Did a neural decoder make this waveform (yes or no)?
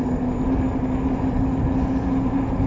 no